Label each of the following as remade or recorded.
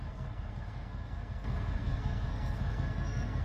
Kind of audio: remade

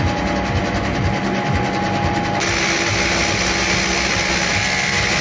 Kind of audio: recorded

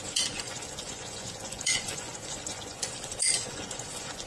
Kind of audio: remade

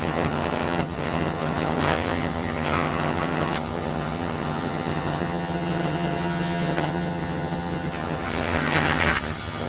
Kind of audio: remade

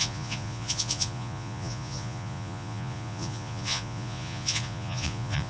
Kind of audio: remade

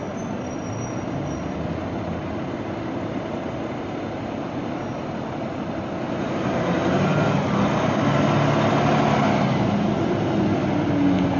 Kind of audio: recorded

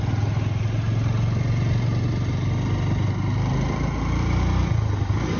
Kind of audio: recorded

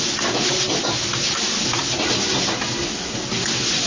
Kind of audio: recorded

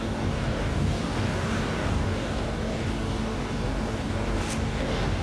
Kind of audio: remade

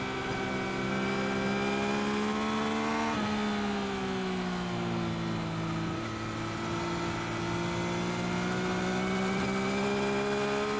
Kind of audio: recorded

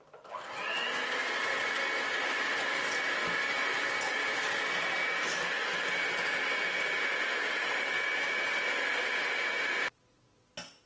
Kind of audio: recorded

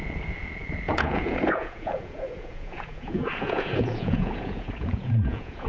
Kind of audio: remade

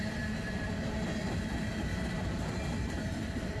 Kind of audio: remade